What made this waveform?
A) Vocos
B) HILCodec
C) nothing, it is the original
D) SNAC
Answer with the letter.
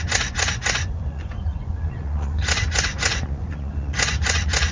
A